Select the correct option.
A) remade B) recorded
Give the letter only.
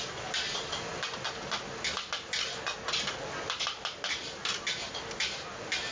B